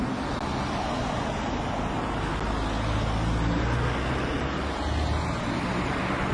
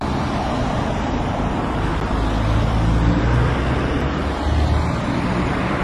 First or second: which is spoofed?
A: second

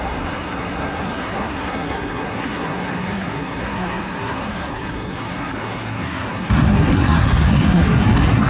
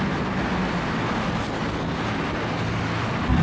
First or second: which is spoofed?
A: first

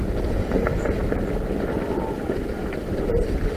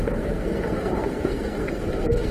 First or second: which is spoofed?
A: second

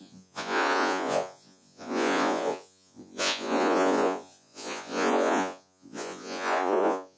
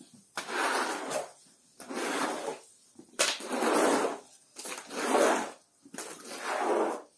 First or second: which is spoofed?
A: first